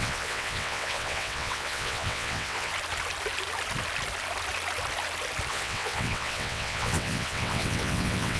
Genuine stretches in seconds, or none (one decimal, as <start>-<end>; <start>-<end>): 2.7-5.5